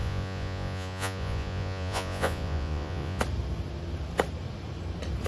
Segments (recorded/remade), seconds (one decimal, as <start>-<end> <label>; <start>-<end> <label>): 0.0-3.2 remade; 3.2-5.3 recorded